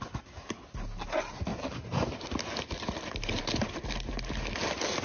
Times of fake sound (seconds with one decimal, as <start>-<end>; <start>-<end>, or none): none